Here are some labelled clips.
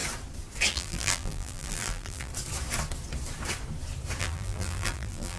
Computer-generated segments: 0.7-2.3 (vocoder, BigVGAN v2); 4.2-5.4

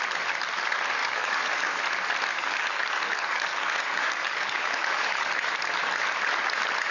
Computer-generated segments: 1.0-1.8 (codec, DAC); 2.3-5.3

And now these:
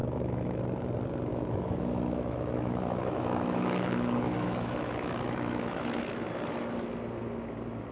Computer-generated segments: 0.0-0.6 (autoencoder, DAC-VAE); 1.3-6.0

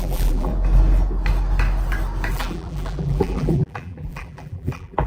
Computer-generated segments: 0.0-0.5 (vocoder, BigVGAN v2); 2.3-5.1